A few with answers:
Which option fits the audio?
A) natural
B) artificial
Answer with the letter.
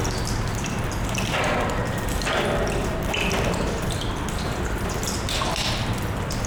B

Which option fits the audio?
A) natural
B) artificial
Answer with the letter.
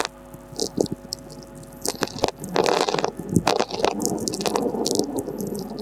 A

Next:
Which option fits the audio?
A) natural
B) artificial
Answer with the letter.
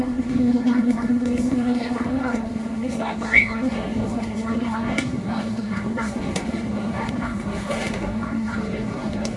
B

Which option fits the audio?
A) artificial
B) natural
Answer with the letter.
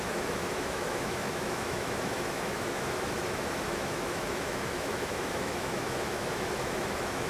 A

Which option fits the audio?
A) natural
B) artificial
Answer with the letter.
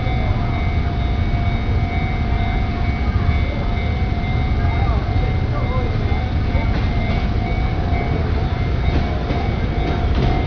A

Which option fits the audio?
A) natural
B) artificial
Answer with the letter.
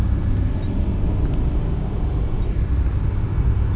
A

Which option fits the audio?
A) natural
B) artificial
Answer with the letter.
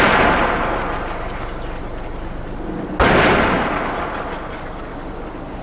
A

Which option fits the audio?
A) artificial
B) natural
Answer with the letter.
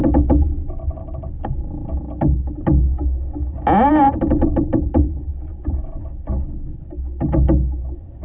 B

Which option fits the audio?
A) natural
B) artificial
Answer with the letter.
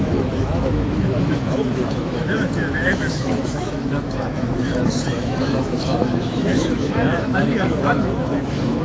B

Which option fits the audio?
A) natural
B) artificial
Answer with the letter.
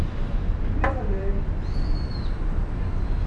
A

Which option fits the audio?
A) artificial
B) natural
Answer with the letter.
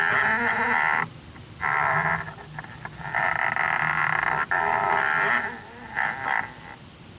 B